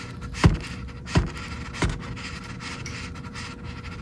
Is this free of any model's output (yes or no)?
yes